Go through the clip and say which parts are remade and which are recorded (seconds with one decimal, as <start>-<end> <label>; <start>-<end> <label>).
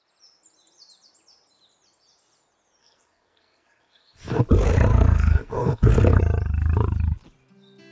0.0-2.8 recorded; 2.8-4.4 remade; 4.4-4.9 recorded; 4.9-6.2 remade; 6.2-7.9 recorded